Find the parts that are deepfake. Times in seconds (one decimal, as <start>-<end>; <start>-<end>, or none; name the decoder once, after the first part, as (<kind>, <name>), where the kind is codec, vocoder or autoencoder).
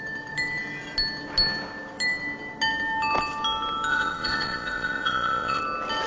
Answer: 3.9-5.6 (vocoder, Vocos)